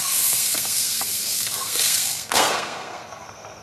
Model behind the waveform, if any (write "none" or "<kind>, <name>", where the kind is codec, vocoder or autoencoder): codec, SNAC